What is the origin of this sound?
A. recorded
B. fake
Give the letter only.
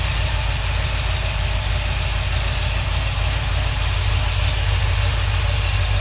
A